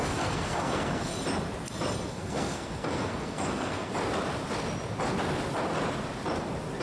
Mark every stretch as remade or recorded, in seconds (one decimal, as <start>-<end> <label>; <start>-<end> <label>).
0.0-1.1 remade; 1.1-2.1 recorded; 2.1-3.9 remade; 3.9-6.8 recorded